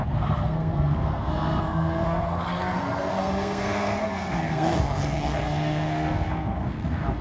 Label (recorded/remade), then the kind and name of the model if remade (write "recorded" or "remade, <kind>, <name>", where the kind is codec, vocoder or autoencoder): remade, codec, SNAC